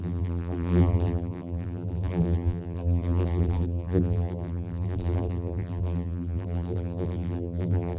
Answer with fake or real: fake